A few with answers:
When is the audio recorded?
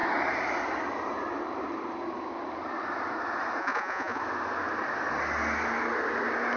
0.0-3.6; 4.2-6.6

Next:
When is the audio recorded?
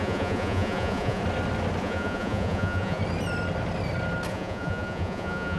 1.2-1.8; 3.0-4.3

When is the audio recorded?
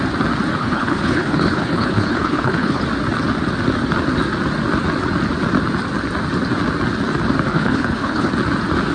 0.0-0.6; 2.8-7.5; 8.3-8.9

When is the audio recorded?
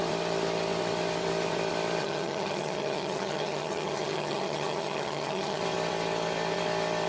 0.0-2.0; 5.6-7.1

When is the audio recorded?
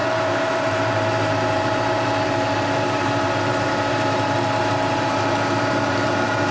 none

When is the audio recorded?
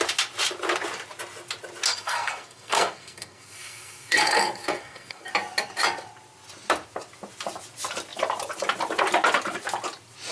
0.0-1.9; 5.3-10.3